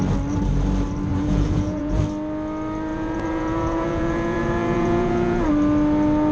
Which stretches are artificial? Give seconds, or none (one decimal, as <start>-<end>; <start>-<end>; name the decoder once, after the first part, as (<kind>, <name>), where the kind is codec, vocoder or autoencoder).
1.1-2.0 (vocoder, Vocos); 2.9-5.5